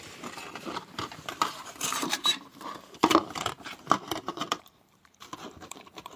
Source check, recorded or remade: remade